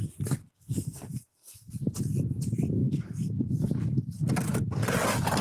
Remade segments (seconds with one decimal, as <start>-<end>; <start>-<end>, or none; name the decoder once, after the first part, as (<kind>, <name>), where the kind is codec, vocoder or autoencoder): 0.4-1.7 (codec, SNAC); 2.8-3.7